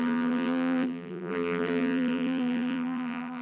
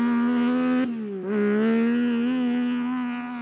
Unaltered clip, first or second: second